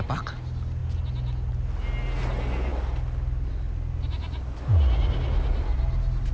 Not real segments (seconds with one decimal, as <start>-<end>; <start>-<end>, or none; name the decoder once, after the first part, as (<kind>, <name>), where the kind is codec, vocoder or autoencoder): none